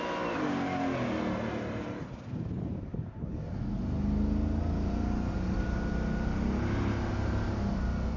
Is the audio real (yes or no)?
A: yes